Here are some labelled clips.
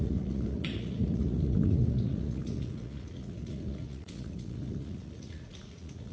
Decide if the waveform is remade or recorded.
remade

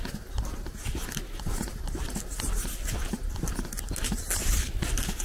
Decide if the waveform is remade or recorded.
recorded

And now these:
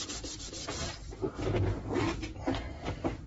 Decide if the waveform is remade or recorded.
remade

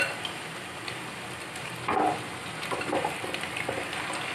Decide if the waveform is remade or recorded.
recorded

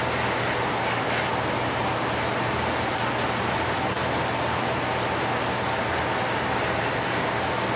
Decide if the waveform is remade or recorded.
recorded